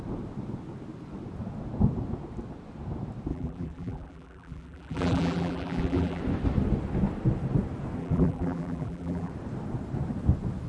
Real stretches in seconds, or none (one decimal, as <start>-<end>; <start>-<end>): 0.0-3.3; 6.2-8.0; 9.3-10.7